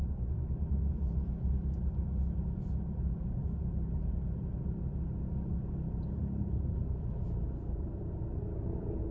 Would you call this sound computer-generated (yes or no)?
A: yes